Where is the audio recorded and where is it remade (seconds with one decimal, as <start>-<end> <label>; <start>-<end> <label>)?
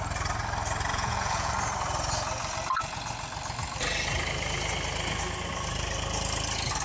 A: 0.0-0.9 recorded; 0.9-1.5 remade; 1.5-6.8 recorded